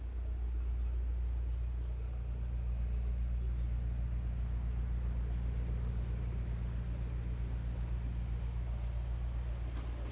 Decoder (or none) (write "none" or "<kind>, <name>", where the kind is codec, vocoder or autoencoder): none